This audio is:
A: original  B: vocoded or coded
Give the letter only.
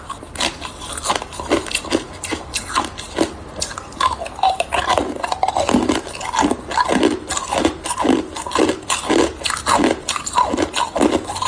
A